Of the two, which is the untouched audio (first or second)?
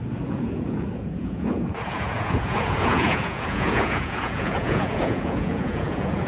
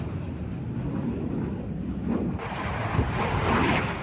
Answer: second